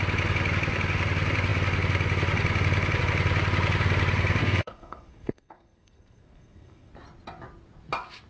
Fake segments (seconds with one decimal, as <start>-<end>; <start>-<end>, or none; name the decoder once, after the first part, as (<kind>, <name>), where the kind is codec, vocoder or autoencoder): 4.4-6.9 (codec, SNAC)